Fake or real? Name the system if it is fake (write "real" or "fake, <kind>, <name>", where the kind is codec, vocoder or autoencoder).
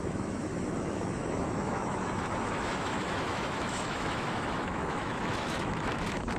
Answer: fake, autoencoder, DAC-VAE